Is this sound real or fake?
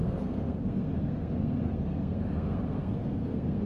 fake